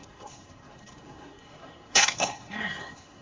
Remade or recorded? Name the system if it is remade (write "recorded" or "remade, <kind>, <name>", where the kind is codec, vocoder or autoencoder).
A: remade, codec, SNAC